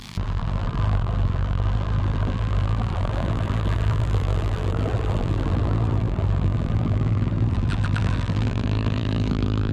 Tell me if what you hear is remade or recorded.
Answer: remade